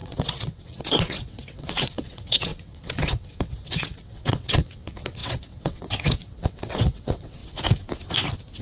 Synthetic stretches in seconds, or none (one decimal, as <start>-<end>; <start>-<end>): 0.0-7.4